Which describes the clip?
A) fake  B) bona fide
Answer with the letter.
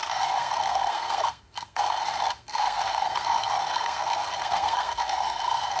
A